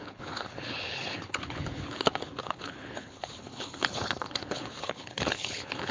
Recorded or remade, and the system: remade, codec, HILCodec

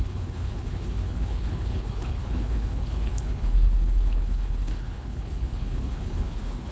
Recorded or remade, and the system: remade, codec, HILCodec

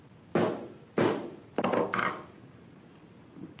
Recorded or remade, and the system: recorded